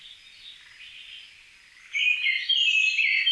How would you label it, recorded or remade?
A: recorded